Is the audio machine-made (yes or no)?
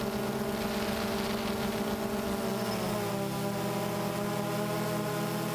no